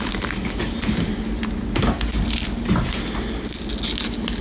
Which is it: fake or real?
real